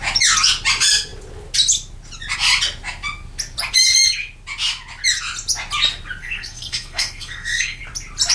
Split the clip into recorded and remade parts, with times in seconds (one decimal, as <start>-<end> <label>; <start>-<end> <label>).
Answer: 0.0-6.2 recorded; 6.2-7.8 remade; 7.8-8.3 recorded